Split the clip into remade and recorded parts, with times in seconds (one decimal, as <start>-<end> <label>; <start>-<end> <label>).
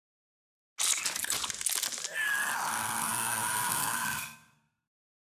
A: 0.0-0.6 remade; 0.6-2.7 recorded; 2.7-5.4 remade